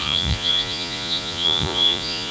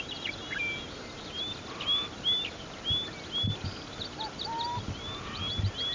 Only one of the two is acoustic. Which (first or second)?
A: second